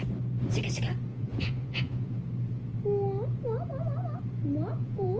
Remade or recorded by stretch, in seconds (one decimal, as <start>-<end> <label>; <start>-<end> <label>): 0.0-1.1 recorded; 1.1-2.2 remade; 2.2-4.7 recorded; 4.7-5.2 remade